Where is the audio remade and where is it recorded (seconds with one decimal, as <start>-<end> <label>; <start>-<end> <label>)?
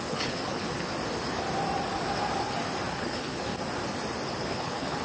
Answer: 0.0-0.9 remade; 0.9-2.9 recorded; 2.9-3.5 remade; 3.5-4.5 recorded; 4.5-5.0 remade